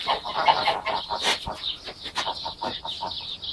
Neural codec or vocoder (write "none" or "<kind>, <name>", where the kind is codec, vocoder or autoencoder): none